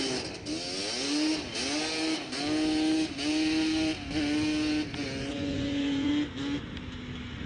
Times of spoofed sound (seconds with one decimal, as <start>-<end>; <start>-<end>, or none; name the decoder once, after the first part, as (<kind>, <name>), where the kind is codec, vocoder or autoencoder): 5.3-6.1 (vocoder, Vocos)